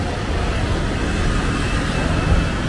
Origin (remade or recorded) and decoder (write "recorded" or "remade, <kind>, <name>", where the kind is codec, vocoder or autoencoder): recorded